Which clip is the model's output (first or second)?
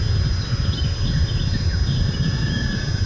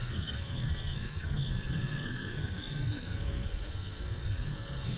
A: second